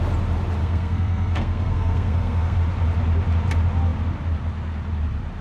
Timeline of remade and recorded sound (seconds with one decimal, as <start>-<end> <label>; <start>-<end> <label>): 0.0-0.6 recorded; 0.6-2.6 remade; 2.6-5.4 recorded